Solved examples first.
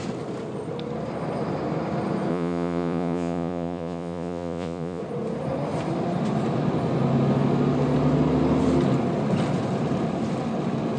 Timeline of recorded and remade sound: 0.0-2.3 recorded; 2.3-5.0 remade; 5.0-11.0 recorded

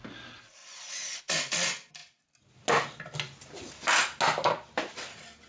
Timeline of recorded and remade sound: 0.0-5.5 recorded

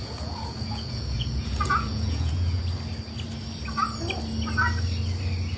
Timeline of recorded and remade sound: 0.0-2.6 remade; 2.6-5.6 recorded

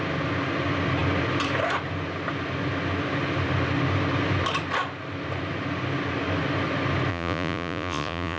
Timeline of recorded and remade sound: 0.0-7.1 recorded; 7.1-8.4 remade

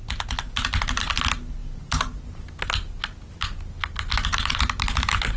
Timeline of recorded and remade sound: 0.0-5.4 recorded

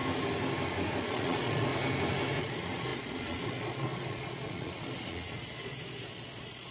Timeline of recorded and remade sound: 0.0-1.0 recorded; 1.0-1.7 remade; 1.7-2.4 recorded; 2.4-6.7 remade

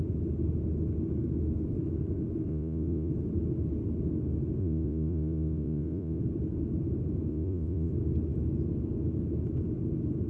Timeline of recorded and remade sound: 0.0-2.5 recorded; 2.5-3.1 remade; 3.1-4.6 recorded; 4.6-6.2 remade; 6.2-7.3 recorded; 7.3-7.9 remade; 7.9-10.3 recorded